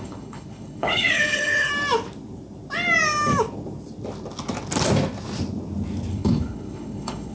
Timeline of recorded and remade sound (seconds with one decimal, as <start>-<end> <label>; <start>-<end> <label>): 0.0-1.7 remade; 1.7-6.1 recorded; 6.1-7.3 remade